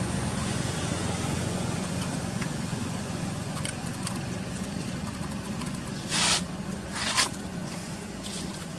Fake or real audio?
fake